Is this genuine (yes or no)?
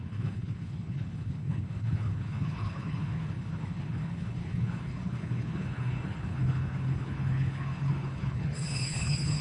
no